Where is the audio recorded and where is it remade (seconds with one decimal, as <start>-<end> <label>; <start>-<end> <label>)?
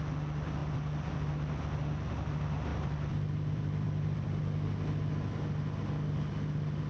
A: 0.0-0.6 recorded; 0.6-1.6 remade; 1.6-2.7 recorded; 2.7-4.4 remade; 4.4-6.9 recorded